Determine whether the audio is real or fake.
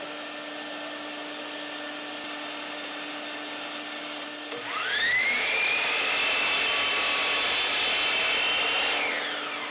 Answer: real